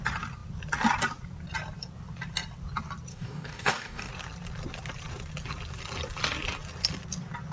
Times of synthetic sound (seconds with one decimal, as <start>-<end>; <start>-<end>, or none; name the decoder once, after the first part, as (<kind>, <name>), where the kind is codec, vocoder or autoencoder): 3.1-4.1 (codec, DAC)